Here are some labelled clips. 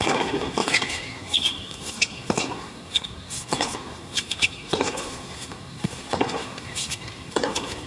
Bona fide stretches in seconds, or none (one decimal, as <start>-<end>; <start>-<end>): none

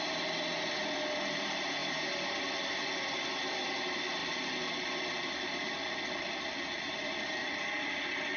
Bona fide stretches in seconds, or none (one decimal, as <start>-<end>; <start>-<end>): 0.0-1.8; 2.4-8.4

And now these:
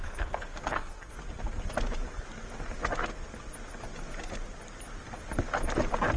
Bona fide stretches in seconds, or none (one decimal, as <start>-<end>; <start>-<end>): 1.1-6.2

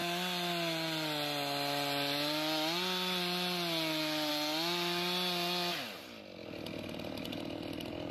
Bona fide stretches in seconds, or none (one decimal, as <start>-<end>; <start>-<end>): 0.0-8.1

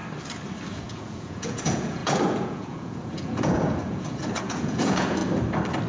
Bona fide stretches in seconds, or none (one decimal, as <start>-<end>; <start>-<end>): 0.0-0.8; 5.2-5.9

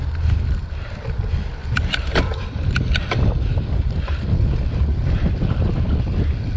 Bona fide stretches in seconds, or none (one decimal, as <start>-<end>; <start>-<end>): 0.0-1.6; 5.6-6.6

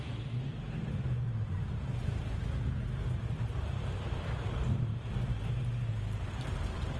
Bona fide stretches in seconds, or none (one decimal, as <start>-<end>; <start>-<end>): 2.4-3.2